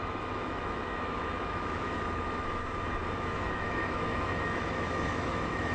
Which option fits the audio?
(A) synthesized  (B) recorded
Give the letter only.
A